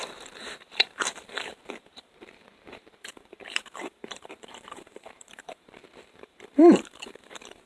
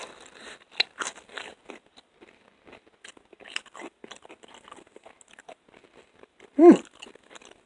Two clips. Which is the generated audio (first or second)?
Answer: first